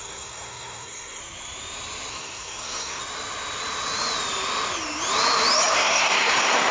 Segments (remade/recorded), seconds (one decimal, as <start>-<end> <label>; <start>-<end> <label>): 0.0-1.2 remade; 1.2-2.1 recorded; 2.1-3.0 remade; 3.0-5.7 recorded; 5.7-6.7 remade